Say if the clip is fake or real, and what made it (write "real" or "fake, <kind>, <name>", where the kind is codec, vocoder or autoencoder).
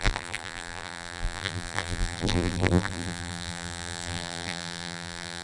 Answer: fake, vocoder, BigVGAN v2